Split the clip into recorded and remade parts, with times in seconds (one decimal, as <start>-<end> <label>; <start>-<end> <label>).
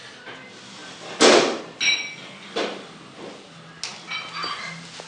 0.0-5.1 recorded